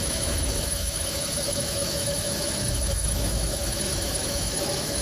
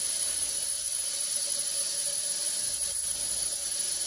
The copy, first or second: first